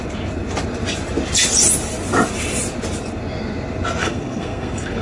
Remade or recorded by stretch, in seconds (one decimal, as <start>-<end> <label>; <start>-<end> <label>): 0.0-4.0 recorded; 4.0-5.0 remade